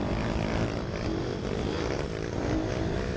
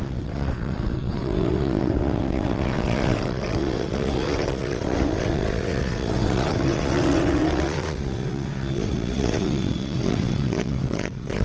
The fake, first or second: second